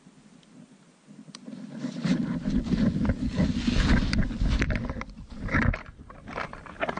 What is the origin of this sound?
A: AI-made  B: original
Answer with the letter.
B